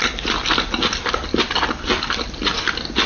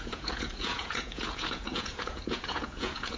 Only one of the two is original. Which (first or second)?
first